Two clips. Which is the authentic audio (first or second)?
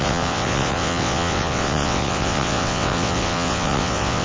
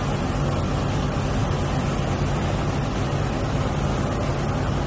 second